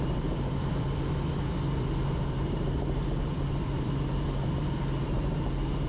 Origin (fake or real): fake